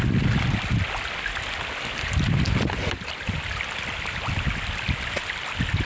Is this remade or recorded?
recorded